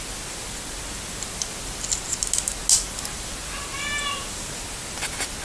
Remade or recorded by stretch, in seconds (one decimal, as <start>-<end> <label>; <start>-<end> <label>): 0.0-5.4 recorded